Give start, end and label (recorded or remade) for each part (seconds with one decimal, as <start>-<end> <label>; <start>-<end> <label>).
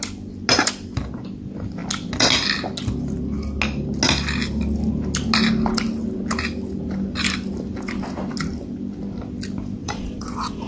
0.0-9.8 recorded; 9.8-10.7 remade